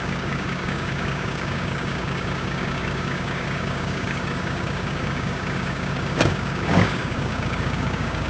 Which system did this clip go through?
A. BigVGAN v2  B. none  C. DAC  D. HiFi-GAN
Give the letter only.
C